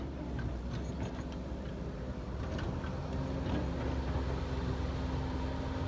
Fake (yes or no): no